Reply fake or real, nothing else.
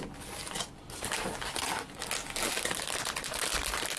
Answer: real